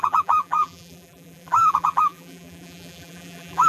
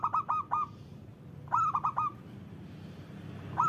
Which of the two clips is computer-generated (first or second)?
first